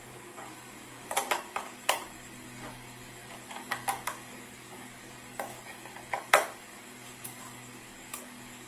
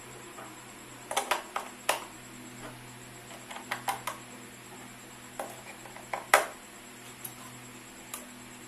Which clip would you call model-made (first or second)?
first